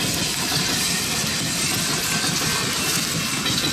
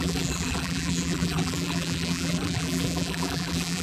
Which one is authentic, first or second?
first